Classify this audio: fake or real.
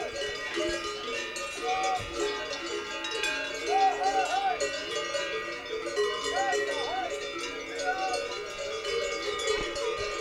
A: real